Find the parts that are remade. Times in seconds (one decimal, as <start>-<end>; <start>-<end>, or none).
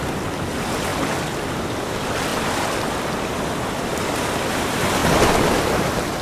2.3-4.5; 5.0-5.7